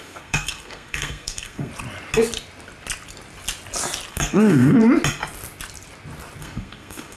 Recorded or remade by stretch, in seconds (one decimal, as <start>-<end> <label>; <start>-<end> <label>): 0.0-1.7 remade; 1.7-4.1 recorded; 4.1-4.8 remade; 4.8-6.4 recorded; 6.4-7.2 remade